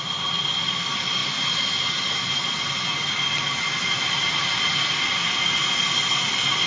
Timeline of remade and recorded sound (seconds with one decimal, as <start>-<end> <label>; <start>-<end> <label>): 0.0-6.7 recorded